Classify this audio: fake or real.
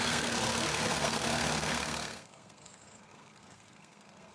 fake